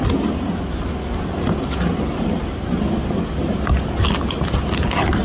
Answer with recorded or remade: recorded